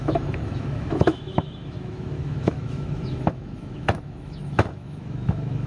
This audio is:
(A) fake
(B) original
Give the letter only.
A